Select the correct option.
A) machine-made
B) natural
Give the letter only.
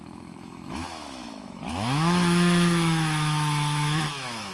A